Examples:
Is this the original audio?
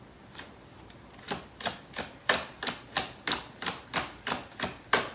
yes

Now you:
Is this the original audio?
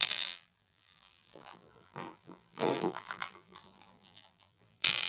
no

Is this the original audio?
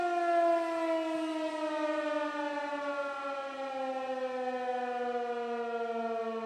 yes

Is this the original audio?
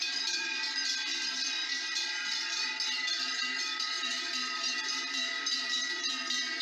no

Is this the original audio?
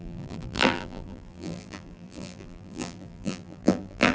no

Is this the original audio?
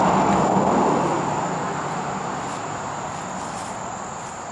yes